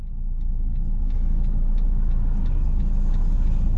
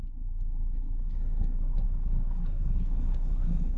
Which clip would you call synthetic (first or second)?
second